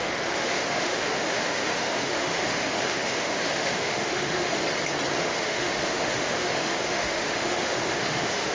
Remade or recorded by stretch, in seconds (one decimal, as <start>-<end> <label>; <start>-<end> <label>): 0.0-4.6 remade; 4.6-5.2 recorded; 5.2-8.5 remade